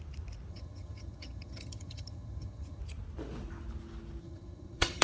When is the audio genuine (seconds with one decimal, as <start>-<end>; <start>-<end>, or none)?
0.0-0.5; 2.8-4.2